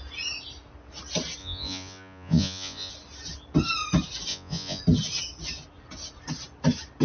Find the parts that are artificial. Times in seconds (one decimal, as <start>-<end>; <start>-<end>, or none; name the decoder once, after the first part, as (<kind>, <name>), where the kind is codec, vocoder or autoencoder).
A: 1.4-2.9 (vocoder, Vocos); 4.3-4.8